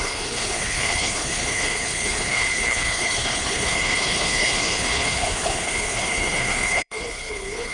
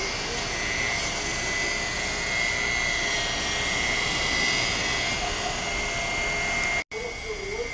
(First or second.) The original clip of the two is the second